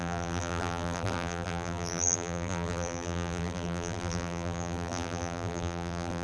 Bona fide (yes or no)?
no